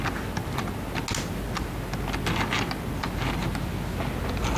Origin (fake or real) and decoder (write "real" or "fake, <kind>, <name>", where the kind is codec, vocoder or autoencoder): real